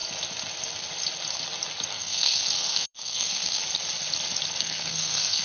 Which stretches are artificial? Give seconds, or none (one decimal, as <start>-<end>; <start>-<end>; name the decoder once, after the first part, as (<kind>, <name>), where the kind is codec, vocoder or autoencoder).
1.9-3.6 (codec, SNAC); 4.6-5.4